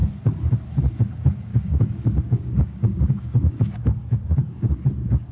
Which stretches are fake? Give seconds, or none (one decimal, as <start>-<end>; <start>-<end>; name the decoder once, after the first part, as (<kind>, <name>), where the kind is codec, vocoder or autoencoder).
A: 1.5-4.7 (codec, DAC)